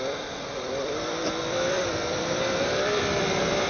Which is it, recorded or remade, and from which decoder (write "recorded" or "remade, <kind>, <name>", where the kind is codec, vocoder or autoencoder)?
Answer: remade, vocoder, BigVGAN v2